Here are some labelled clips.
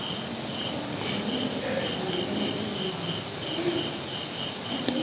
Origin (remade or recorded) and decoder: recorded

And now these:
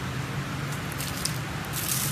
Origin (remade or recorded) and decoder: remade, vocoder, BigVGAN v2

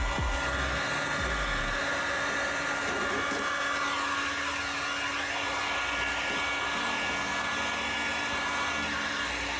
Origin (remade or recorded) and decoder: recorded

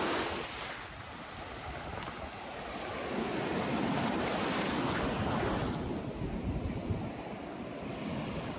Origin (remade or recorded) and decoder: recorded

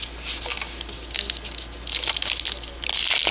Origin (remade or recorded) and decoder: recorded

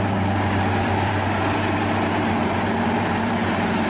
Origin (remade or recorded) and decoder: remade, vocoder, BigVGAN v2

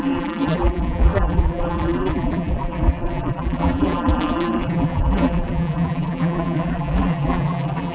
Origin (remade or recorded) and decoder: remade, vocoder, BigVGAN v2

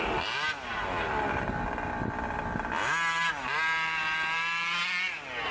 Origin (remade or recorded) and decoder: recorded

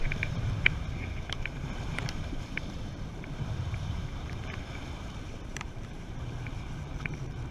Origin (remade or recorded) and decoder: remade, vocoder, BigVGAN v2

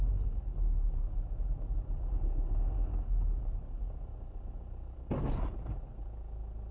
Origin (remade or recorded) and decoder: recorded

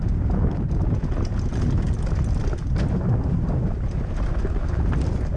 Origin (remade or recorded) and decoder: recorded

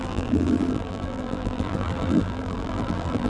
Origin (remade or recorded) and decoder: remade, vocoder, BigVGAN v2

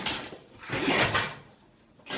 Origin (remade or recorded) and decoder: remade, vocoder, BigVGAN v2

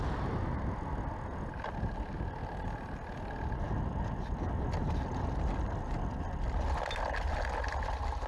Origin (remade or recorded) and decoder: recorded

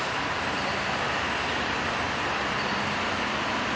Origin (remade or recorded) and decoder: remade, vocoder, BigVGAN v2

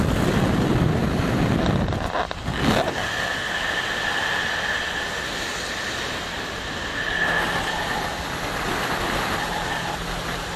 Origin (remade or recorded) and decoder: recorded